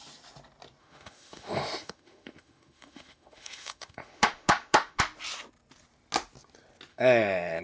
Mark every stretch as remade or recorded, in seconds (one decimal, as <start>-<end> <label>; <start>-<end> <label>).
0.0-0.8 recorded; 0.8-5.0 remade; 5.0-6.9 recorded; 6.9-7.6 remade